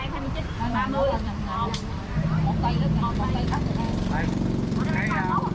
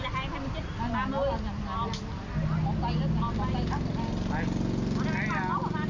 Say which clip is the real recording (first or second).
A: second